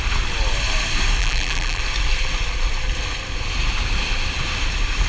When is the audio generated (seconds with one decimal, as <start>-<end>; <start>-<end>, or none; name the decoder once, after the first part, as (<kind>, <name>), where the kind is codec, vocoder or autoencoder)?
1.2-1.8 (vocoder, BigVGAN v2)